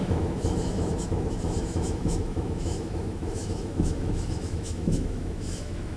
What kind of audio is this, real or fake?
fake